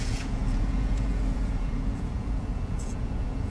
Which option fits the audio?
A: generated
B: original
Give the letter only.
A